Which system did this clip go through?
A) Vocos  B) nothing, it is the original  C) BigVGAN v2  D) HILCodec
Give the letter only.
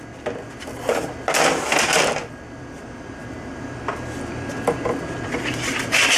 C